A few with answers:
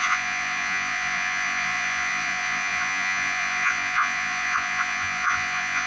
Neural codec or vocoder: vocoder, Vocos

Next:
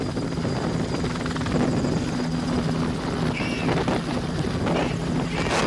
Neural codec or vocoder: none